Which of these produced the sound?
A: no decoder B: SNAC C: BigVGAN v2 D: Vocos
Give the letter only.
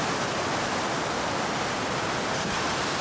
A